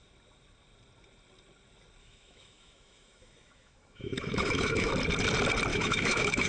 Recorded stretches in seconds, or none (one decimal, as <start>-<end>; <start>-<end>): 0.0-2.0; 4.9-5.7